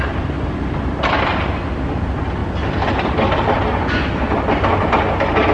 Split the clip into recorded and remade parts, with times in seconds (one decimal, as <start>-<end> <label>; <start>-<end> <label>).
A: 0.0-5.5 recorded